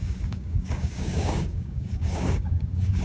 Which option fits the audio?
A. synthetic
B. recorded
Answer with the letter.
A